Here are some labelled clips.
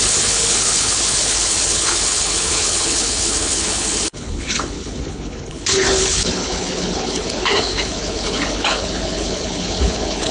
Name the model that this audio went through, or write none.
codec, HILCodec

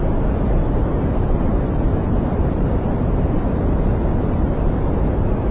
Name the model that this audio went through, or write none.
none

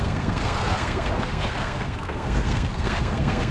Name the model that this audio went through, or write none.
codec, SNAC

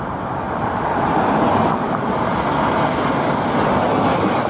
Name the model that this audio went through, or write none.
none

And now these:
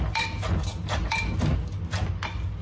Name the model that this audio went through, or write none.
none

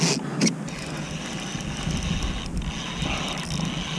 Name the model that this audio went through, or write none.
none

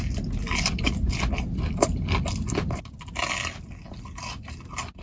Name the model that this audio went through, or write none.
none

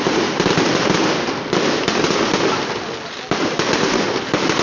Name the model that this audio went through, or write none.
none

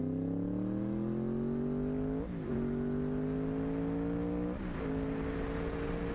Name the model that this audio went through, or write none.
none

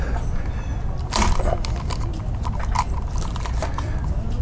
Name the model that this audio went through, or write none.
none